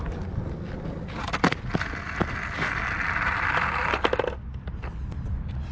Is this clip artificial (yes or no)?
no